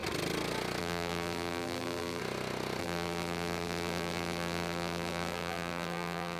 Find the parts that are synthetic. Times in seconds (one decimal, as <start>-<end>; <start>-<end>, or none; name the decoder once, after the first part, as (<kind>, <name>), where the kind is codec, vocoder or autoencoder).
0.8-2.2 (vocoder, BigVGAN v2); 2.8-6.4